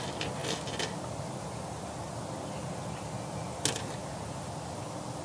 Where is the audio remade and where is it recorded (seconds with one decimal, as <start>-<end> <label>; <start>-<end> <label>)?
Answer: 0.0-5.2 recorded